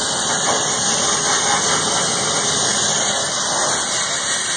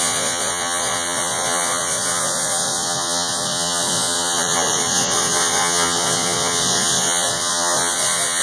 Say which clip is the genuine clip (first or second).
first